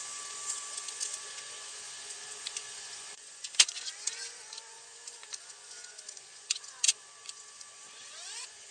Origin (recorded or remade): remade